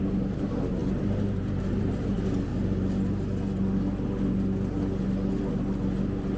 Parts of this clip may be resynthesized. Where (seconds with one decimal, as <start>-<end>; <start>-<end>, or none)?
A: 0.0-2.5